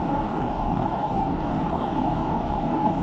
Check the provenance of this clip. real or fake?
fake